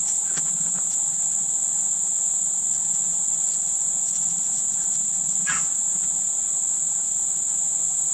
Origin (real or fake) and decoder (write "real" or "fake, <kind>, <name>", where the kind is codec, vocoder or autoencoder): real